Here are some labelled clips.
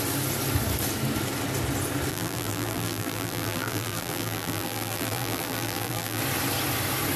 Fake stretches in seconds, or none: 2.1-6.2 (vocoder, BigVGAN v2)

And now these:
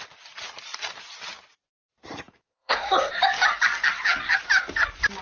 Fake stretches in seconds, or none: 2.5-3.1 (codec, SNAC)

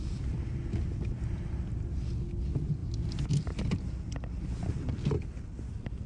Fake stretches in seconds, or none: none